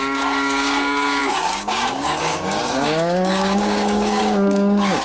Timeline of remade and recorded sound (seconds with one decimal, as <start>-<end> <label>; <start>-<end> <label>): 0.0-5.0 remade